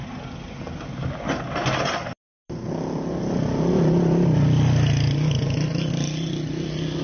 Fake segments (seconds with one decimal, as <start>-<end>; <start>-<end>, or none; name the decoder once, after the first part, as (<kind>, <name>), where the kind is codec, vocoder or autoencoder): none